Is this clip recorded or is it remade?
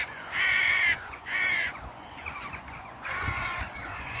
remade